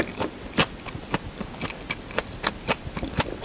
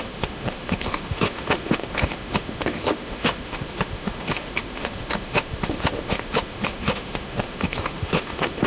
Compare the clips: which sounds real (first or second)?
first